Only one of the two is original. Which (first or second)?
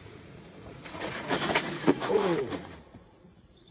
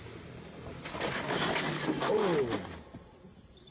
second